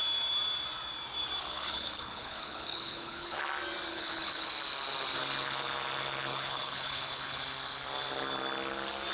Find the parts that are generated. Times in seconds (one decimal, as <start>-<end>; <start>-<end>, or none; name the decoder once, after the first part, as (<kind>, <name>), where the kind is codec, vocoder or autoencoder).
1.4-3.4 (codec, HILCodec); 3.9-4.5; 6.3-7.4